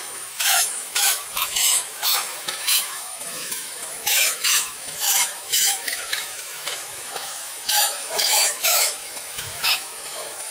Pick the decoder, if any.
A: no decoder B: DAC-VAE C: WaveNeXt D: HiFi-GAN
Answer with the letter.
B